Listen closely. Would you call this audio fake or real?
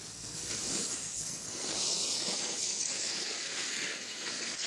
fake